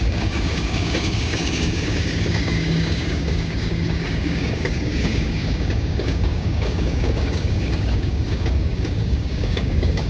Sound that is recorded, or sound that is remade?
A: remade